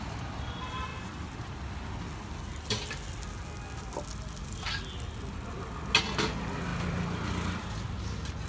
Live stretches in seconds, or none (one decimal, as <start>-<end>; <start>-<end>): 0.0-8.5